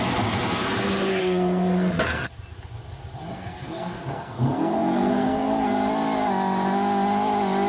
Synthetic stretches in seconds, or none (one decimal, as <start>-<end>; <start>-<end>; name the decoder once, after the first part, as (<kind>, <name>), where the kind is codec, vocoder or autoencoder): 1.2-2.3 (codec, SNAC); 3.3-5.7

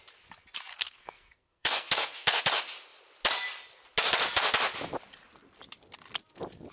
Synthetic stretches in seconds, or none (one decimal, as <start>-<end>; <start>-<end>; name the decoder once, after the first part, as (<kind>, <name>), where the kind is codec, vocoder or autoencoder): 0.7-2.4 (codec, SNAC)

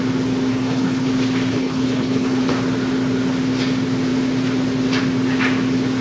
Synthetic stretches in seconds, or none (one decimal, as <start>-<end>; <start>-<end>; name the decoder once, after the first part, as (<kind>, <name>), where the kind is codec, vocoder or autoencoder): 0.5-1.1 (codec, HILCodec); 1.5-2.4

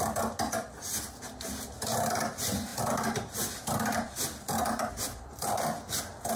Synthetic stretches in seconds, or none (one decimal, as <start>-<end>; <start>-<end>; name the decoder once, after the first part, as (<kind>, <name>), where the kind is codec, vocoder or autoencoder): none